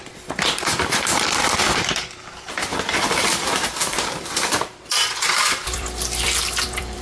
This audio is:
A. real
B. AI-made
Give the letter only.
B